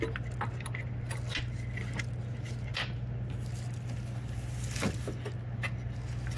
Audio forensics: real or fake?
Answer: real